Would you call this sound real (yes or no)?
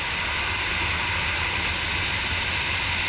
yes